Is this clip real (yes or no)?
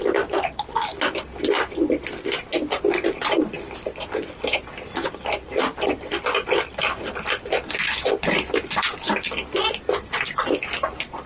yes